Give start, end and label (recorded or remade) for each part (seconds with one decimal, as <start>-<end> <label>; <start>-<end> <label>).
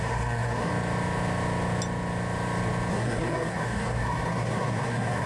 0.0-0.7 remade; 0.7-2.9 recorded; 2.9-5.3 remade